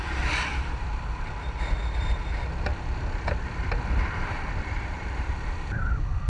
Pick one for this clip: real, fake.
fake